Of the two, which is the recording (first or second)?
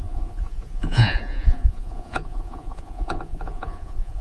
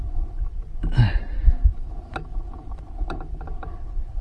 second